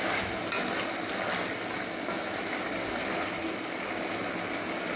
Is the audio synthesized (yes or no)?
no